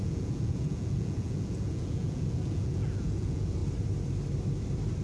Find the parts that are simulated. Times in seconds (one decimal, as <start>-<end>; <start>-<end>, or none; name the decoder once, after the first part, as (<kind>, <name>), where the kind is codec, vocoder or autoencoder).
0.0-3.6 (vocoder, Vocos)